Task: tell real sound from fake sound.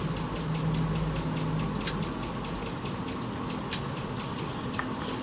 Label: real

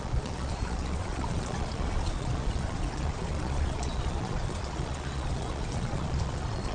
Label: fake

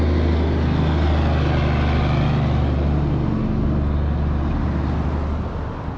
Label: real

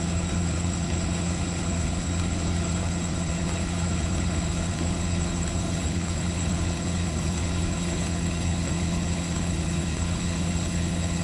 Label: fake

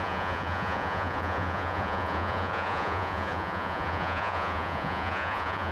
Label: fake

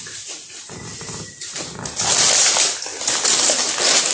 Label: real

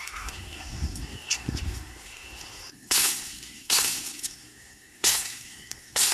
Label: fake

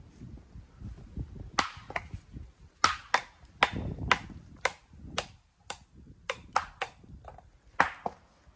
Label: real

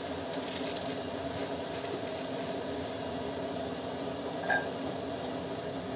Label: real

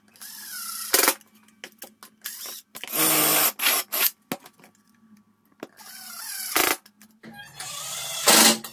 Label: real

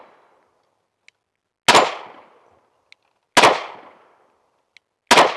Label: real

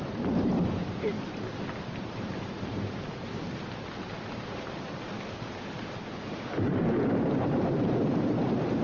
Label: fake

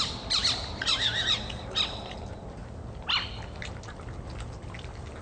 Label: real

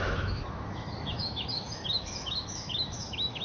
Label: fake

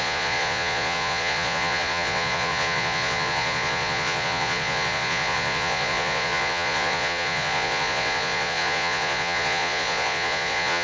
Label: fake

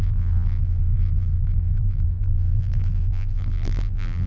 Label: fake